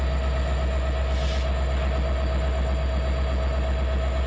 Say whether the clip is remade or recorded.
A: recorded